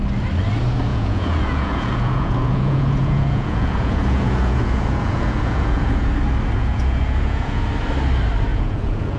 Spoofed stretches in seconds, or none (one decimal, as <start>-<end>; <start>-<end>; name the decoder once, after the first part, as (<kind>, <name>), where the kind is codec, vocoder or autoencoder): 0.9-6.1 (vocoder, Vocos); 6.6-7.6; 8.5-9.2